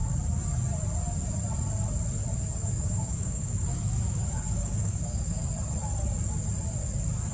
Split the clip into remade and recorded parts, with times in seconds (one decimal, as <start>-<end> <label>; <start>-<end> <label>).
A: 0.0-2.6 recorded; 2.6-5.4 remade; 5.4-7.3 recorded